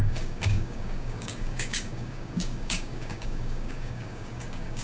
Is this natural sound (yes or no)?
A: no